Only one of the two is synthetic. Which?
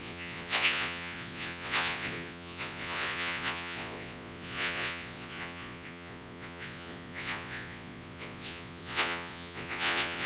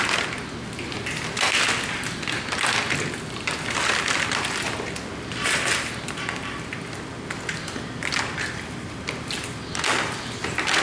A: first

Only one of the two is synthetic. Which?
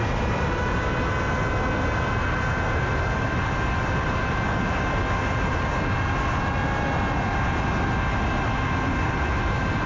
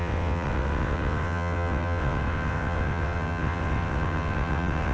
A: second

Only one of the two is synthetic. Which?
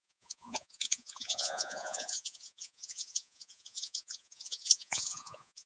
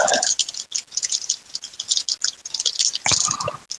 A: first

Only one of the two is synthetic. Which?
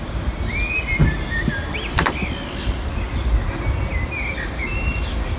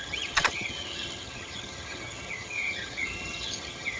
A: second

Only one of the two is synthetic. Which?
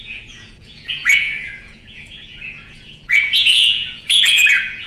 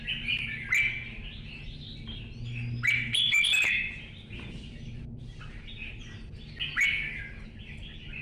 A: first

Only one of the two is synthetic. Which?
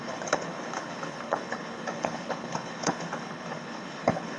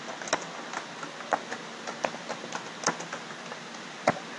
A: first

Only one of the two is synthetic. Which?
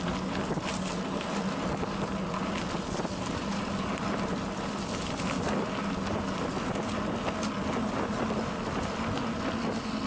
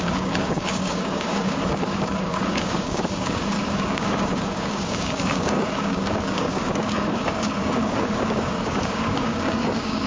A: second